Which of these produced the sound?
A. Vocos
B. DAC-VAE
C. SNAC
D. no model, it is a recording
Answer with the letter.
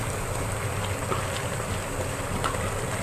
D